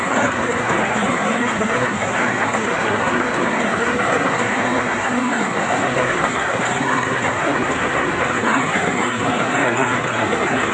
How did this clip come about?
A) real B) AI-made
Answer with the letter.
B